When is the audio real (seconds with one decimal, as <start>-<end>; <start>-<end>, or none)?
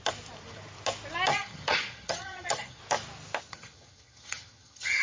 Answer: 0.0-1.3; 2.8-3.5